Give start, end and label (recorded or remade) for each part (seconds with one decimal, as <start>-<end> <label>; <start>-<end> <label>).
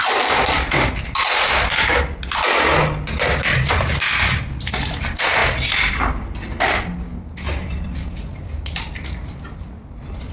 0.0-10.3 recorded